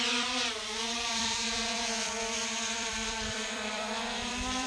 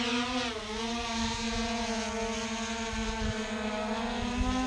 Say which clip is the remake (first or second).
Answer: first